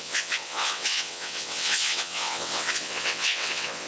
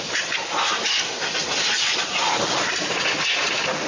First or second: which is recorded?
second